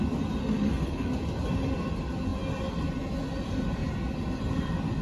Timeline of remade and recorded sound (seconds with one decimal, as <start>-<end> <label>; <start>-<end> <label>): 0.0-0.4 recorded; 0.4-1.1 remade; 1.1-5.0 recorded